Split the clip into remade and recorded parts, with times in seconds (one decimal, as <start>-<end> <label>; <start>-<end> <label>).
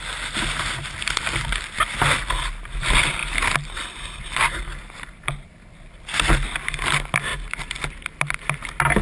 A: 0.0-9.0 recorded